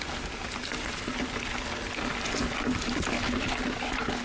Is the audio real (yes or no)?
yes